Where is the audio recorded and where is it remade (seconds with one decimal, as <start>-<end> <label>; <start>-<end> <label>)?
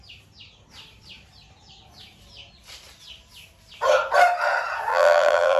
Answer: 0.0-4.9 recorded; 4.9-5.6 remade